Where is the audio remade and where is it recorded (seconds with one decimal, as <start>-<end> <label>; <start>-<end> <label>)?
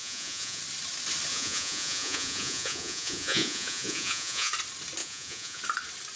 0.0-0.6 remade; 0.6-1.3 recorded; 1.3-4.5 remade; 4.5-5.0 recorded; 5.0-5.6 remade; 5.6-6.2 recorded